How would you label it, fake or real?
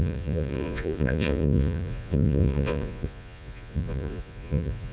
fake